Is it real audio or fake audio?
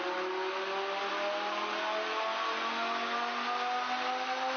real